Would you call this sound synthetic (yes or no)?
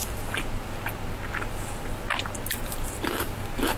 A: no